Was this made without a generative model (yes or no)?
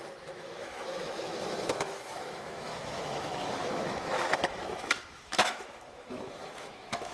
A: no